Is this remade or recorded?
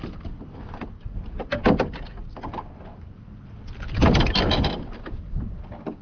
recorded